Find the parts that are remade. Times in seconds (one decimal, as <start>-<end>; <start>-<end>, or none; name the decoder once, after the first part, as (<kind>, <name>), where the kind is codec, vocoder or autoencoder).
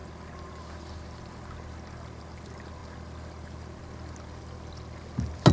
none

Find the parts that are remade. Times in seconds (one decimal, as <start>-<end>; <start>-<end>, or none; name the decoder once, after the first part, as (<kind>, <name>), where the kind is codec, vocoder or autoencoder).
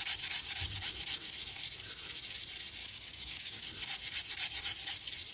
2.8-3.6 (codec, DAC)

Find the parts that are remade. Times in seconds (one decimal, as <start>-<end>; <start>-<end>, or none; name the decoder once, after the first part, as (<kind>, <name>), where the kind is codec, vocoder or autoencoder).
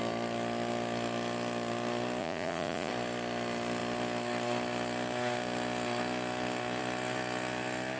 2.2-2.9 (vocoder, Vocos)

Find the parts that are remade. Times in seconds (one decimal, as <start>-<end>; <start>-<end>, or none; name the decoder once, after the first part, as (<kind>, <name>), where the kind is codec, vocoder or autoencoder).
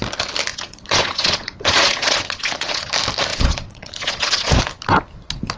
0.5-2.9 (vocoder, Vocos); 3.3-4.6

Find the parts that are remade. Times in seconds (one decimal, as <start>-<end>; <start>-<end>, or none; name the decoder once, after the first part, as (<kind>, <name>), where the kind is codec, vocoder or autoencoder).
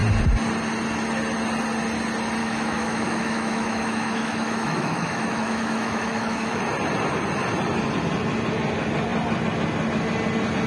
2.4-6.6 (autoencoder, DAC-VAE)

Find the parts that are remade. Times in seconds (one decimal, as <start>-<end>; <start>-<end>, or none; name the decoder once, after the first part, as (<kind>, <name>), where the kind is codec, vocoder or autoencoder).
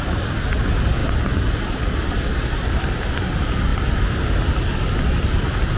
none